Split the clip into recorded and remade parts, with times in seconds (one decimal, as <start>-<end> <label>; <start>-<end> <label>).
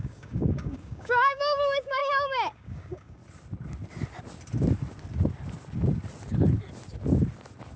0.0-3.2 remade; 3.2-7.8 recorded